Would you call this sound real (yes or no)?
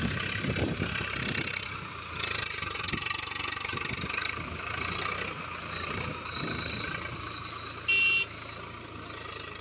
yes